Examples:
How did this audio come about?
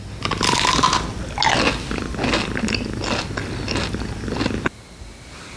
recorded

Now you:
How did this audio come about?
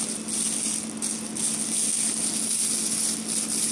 recorded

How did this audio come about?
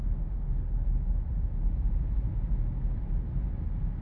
recorded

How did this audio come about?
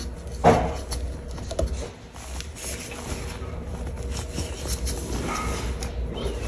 recorded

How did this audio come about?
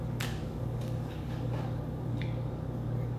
remade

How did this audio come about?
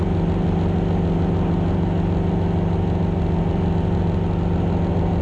recorded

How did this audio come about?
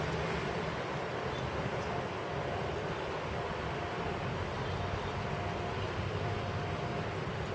recorded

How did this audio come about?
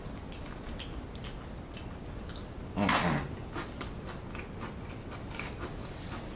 recorded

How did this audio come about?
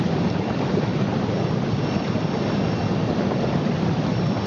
recorded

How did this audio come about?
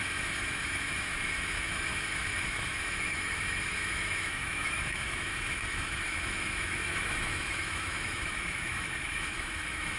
remade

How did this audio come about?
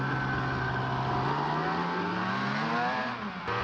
recorded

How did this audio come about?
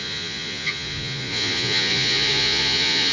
remade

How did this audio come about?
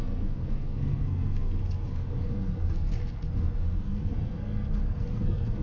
remade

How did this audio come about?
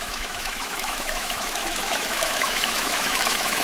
remade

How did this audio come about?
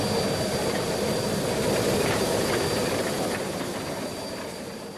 recorded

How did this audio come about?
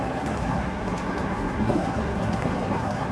remade